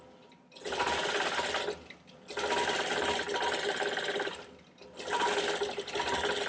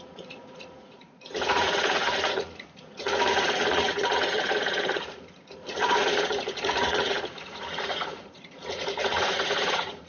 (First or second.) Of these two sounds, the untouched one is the first